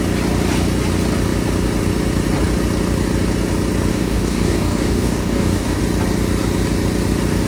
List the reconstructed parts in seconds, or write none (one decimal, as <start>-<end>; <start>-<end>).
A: 3.9-5.8